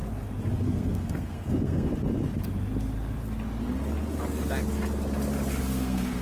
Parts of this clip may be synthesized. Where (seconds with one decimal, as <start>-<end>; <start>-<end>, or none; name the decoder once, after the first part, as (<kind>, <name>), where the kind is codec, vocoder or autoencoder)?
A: 0.5-1.9 (codec, SNAC); 5.6-6.2